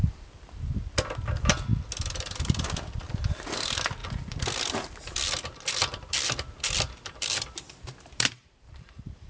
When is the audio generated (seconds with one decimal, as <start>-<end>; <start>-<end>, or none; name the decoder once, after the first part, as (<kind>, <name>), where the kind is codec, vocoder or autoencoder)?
0.0-1.7 (vocoder, BigVGAN v2); 3.3-4.0; 6.1-9.3